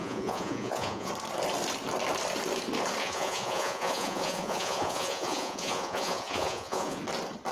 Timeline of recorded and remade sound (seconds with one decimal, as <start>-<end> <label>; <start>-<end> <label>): 0.0-1.1 remade; 1.1-3.0 recorded; 3.0-7.0 remade; 7.0-7.5 recorded